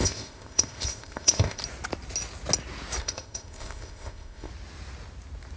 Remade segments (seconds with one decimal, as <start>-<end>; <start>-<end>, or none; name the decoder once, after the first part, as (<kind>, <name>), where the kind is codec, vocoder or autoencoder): 0.0-1.6 (codec, ZipCodec); 3.0-4.5